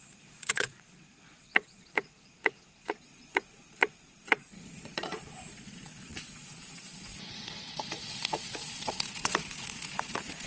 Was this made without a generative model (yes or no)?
no